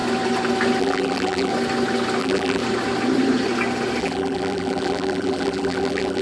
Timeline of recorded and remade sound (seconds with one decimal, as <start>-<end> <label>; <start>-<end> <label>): 0.0-0.8 recorded; 0.8-1.5 remade; 1.5-2.2 recorded; 2.2-2.6 remade; 2.6-4.0 recorded; 4.0-6.2 remade